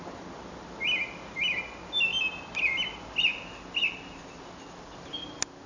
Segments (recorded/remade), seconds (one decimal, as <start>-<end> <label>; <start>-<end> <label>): 0.0-5.7 recorded